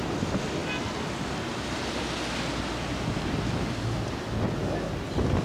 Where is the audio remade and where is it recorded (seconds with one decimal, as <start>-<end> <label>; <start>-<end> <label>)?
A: 0.0-5.4 recorded